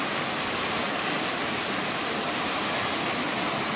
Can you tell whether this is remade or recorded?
recorded